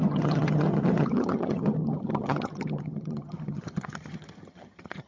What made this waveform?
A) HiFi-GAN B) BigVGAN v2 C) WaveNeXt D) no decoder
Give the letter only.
A